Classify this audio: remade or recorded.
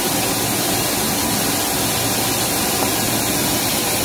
recorded